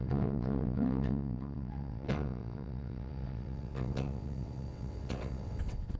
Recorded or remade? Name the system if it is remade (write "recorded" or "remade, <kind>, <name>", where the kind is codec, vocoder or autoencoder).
remade, vocoder, WaveNeXt